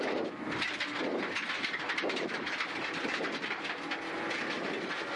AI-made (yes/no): no